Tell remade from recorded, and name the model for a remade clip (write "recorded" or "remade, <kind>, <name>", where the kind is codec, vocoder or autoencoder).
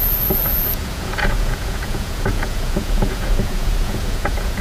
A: remade, vocoder, Vocos